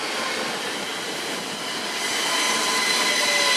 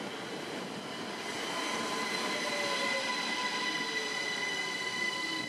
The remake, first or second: second